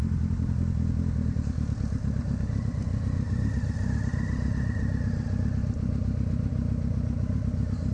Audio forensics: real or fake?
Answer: real